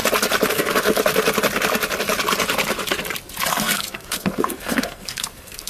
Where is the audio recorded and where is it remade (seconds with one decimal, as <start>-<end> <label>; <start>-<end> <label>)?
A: 0.0-0.5 recorded; 0.5-1.0 remade; 1.0-3.5 recorded; 3.5-5.7 remade